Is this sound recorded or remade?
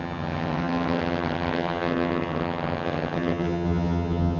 remade